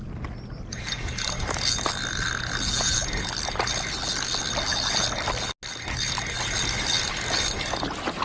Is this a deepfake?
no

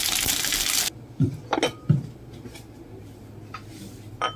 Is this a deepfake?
no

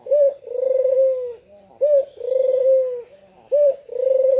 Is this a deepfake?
no